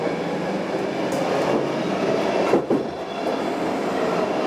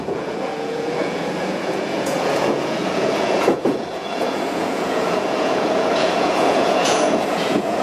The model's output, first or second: second